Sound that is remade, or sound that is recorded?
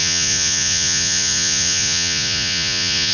remade